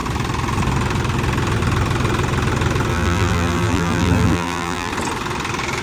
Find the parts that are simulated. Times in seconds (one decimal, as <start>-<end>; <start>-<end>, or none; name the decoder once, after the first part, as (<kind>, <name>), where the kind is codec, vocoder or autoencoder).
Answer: 2.9-4.9 (vocoder, BigVGAN v2)